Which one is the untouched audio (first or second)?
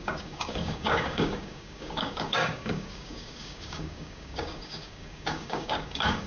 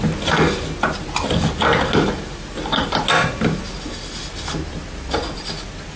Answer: second